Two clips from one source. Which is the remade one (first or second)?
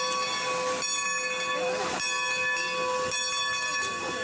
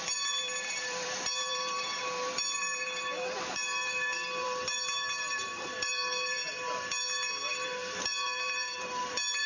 second